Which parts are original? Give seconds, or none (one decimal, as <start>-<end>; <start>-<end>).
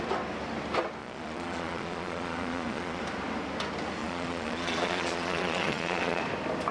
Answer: 0.0-1.0; 3.0-4.0; 6.2-6.7